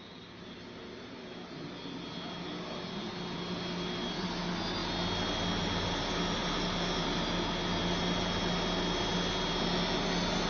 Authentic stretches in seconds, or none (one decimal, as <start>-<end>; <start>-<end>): 0.0-10.5